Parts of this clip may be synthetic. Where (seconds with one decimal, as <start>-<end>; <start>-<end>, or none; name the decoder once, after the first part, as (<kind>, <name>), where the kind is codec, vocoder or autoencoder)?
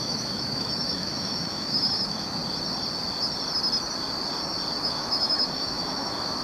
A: 0.0-2.4 (autoencoder, DAC-VAE); 4.8-6.4